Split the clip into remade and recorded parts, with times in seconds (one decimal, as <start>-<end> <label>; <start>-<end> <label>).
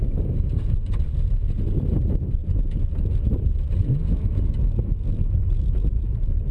0.0-2.4 remade; 2.4-5.3 recorded; 5.3-6.5 remade